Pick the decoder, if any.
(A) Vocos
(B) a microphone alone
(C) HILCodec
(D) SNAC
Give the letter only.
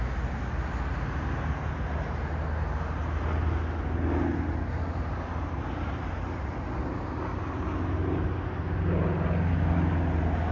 B